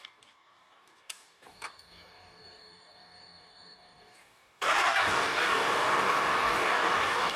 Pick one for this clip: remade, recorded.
remade